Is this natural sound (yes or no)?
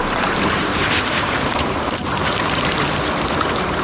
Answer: no